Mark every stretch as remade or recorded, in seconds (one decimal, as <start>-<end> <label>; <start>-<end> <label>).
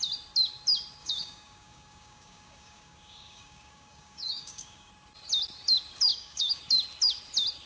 0.0-1.0 recorded; 1.0-4.9 remade; 4.9-6.1 recorded; 6.1-6.6 remade; 6.6-7.7 recorded